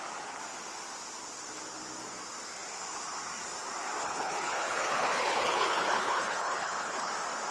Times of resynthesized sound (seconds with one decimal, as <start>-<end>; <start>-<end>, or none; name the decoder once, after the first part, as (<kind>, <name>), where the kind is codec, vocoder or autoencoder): 4.0-7.1 (codec, HILCodec)